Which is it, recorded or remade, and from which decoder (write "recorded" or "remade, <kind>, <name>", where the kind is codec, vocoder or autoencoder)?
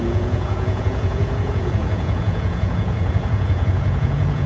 remade, vocoder, Vocos